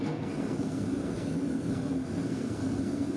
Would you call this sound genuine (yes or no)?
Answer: no